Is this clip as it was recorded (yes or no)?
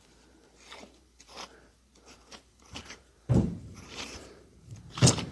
no